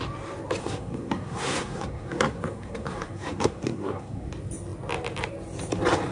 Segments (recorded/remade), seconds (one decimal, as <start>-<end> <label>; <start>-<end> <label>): 0.0-0.6 recorded; 0.6-4.3 remade; 4.3-6.1 recorded